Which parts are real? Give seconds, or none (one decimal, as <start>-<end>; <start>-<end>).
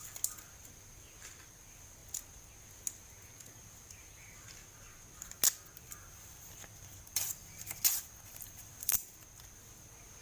0.0-0.7; 2.0-3.3; 4.6-5.8